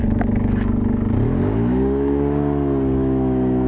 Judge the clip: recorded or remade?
remade